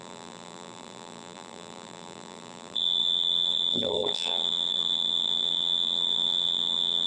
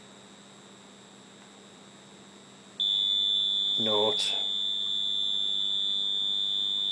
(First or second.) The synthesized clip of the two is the first